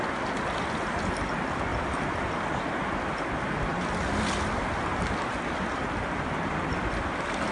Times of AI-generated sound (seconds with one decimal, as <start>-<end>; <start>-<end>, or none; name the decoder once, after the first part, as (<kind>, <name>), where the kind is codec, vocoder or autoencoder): 3.7-7.5 (vocoder, BigVGAN v2)